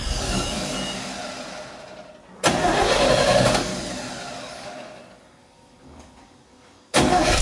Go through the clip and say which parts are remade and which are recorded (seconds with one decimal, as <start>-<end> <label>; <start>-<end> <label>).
0.0-1.1 remade; 1.1-3.1 recorded; 3.1-3.7 remade; 3.7-4.4 recorded; 4.4-7.4 remade